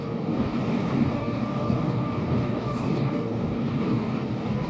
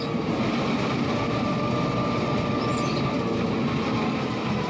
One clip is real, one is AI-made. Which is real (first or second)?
second